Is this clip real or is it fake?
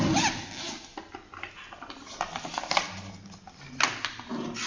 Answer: real